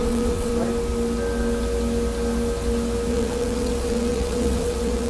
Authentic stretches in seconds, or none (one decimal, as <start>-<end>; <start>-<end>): 0.5-3.1